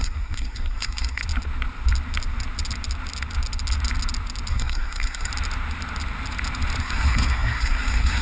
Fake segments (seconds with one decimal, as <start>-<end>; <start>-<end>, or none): 0.0-1.2; 4.5-5.3; 6.8-8.2